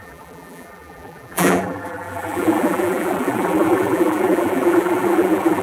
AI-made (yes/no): yes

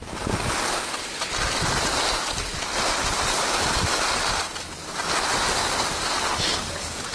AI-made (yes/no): no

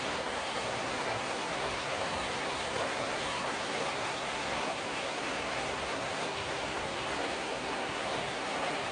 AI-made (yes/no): yes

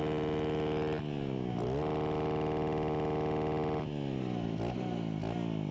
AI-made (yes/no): no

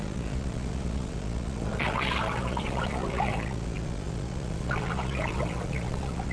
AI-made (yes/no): yes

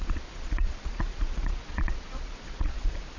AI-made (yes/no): yes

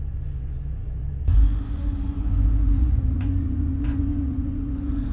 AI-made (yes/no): yes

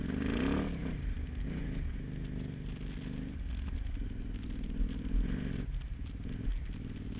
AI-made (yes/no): no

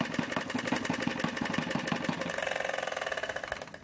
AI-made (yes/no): no